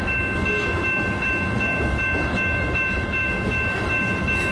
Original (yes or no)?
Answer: no